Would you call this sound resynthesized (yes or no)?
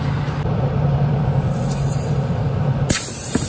yes